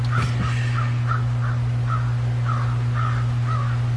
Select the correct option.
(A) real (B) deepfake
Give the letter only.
A